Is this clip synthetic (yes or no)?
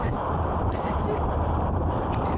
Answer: yes